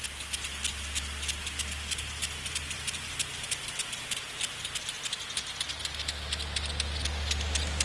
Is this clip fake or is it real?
real